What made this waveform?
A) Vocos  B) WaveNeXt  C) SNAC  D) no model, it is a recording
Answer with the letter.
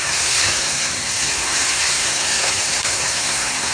C